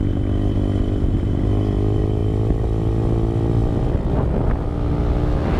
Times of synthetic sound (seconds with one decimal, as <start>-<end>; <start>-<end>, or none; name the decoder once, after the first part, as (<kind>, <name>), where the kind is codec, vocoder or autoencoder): none